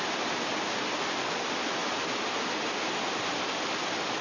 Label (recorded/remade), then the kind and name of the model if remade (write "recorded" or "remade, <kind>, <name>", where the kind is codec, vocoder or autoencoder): recorded